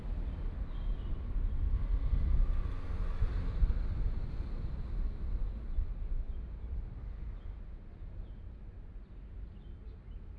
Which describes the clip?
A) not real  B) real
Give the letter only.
B